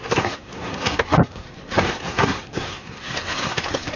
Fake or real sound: fake